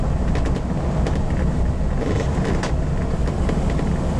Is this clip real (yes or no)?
yes